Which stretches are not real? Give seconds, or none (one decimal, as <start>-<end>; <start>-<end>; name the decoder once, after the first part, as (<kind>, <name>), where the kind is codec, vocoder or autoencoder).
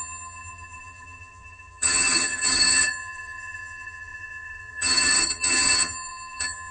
0.0-6.7 (vocoder, HiFi-GAN)